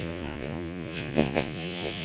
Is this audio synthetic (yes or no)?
yes